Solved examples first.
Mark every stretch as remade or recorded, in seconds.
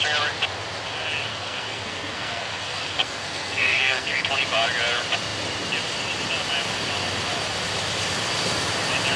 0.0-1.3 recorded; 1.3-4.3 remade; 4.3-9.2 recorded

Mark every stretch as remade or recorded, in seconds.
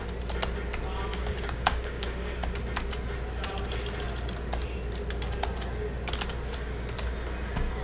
0.0-1.1 recorded; 1.1-2.3 remade; 2.3-7.8 recorded